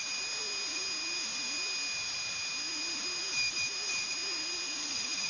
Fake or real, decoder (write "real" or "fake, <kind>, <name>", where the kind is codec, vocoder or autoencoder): real